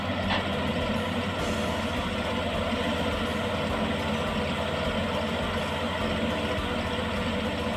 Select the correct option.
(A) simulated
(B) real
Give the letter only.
B